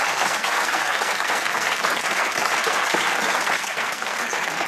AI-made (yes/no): yes